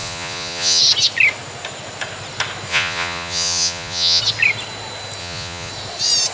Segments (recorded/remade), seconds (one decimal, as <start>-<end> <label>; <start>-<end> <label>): 0.0-0.8 remade; 0.8-2.7 recorded; 2.7-4.2 remade; 4.2-5.2 recorded; 5.2-5.7 remade; 5.7-6.3 recorded